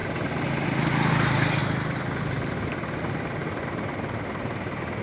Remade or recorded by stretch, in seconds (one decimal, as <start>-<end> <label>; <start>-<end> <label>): 0.0-5.0 recorded